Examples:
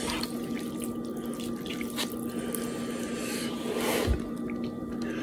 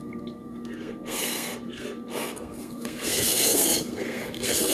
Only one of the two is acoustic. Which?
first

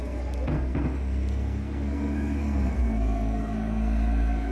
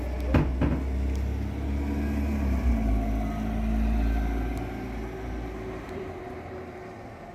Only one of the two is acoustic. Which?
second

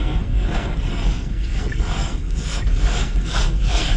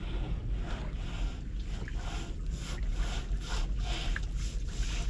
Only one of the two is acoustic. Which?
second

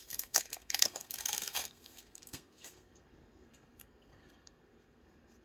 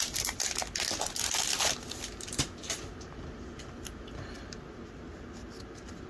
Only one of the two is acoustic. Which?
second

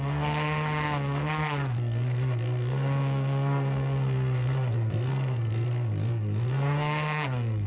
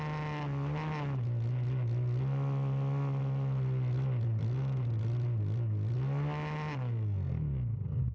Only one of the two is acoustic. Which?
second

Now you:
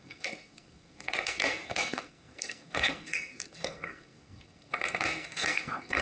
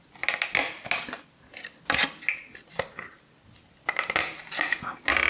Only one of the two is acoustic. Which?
second